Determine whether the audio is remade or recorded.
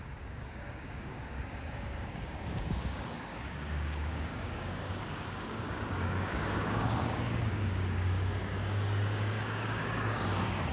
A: remade